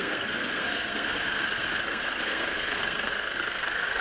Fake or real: fake